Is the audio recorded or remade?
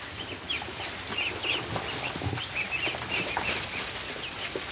recorded